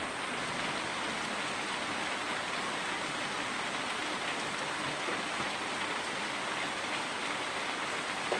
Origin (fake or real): real